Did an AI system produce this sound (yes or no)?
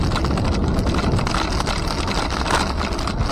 no